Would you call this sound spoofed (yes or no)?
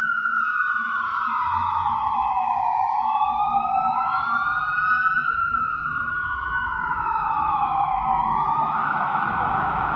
yes